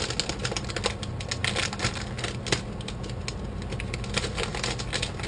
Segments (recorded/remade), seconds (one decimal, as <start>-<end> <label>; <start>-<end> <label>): 0.0-5.3 recorded